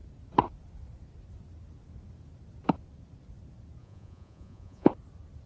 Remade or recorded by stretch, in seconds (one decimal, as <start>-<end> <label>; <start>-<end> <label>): 0.0-3.8 recorded; 3.8-4.9 remade; 4.9-5.5 recorded